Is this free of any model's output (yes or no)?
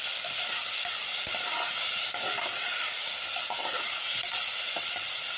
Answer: yes